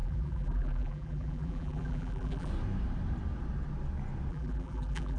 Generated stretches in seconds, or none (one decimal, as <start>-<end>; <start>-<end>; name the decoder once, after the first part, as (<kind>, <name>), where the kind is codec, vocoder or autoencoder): 0.0-2.5 (vocoder, BigVGAN v2); 4.3-5.2

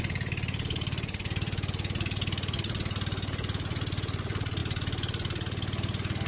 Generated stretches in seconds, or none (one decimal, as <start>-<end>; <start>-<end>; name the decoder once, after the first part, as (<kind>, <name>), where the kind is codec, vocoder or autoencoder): 0.0-4.6 (vocoder, BigVGAN v2)

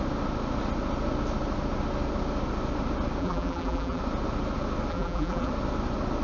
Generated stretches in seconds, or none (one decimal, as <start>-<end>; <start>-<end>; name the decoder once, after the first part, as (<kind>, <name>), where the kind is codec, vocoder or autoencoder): 3.2-4.0 (vocoder, BigVGAN v2); 4.9-5.5

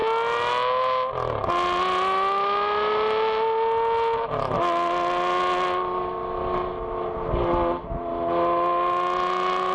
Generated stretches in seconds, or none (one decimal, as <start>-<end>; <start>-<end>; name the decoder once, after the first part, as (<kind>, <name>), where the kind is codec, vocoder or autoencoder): none